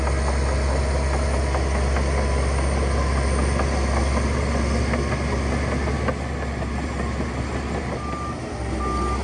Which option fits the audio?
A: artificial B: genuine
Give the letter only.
B